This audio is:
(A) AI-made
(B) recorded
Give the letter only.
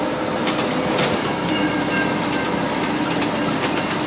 B